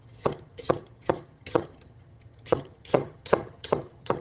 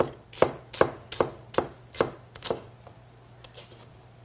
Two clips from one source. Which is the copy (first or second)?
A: first